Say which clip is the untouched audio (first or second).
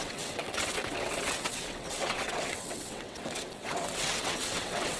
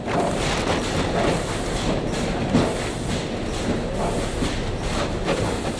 second